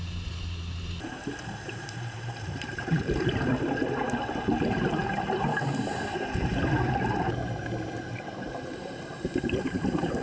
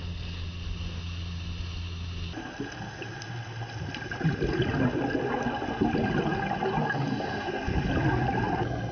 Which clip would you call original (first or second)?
second